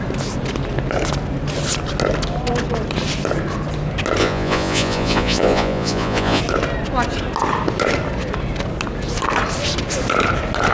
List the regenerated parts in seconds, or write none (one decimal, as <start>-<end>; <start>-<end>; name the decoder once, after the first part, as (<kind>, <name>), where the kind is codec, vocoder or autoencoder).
4.2-6.4 (vocoder, Vocos)